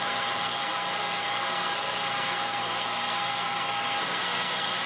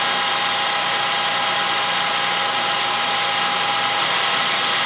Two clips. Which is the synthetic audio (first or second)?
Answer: first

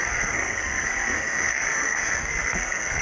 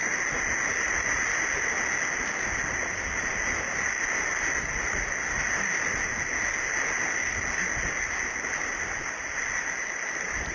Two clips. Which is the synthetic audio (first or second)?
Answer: first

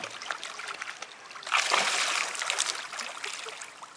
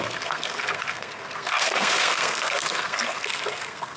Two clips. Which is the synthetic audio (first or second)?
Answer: second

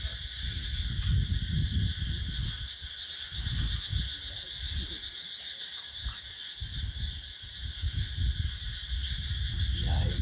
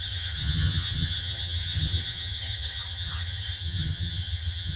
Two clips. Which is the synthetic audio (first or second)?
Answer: second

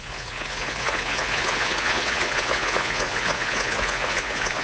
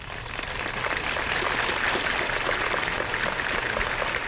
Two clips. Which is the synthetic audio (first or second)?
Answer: first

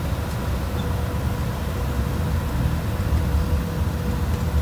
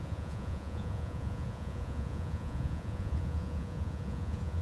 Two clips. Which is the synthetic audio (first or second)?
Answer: second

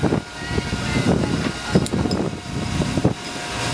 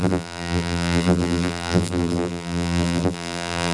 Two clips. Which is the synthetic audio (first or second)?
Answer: second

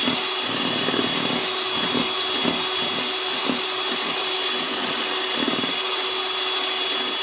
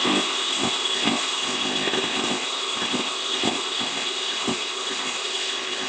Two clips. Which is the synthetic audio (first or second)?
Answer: second